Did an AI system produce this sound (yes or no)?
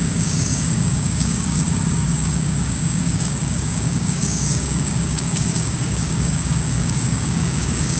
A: yes